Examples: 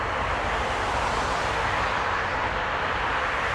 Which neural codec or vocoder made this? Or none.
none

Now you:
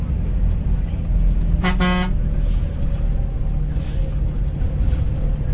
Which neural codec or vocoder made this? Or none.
none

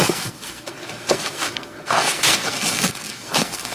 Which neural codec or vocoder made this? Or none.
codec, SNAC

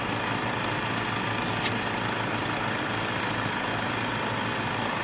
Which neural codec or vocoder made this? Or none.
none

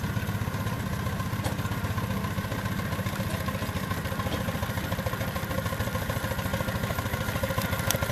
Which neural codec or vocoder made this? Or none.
none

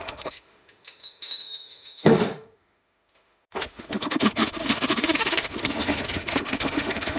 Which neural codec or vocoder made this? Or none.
autoencoder, DAC-VAE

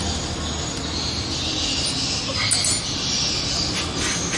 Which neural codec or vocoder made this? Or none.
none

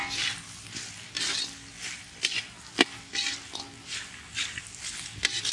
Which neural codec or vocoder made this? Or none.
none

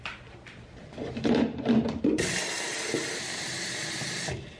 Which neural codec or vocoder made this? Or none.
none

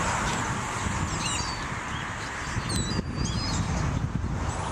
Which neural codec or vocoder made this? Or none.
none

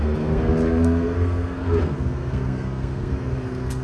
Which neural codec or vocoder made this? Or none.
codec, SNAC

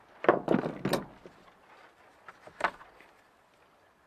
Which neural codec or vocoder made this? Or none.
none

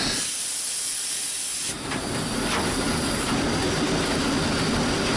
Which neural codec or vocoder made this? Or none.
none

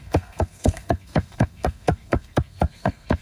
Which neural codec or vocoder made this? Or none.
codec, SNAC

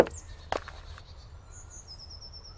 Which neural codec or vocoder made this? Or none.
none